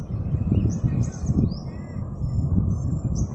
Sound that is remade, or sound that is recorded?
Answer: recorded